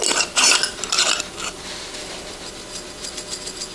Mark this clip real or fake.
real